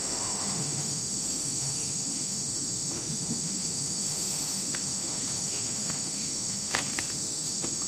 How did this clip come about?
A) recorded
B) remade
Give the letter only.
B